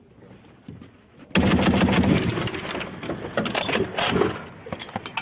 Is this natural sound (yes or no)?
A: yes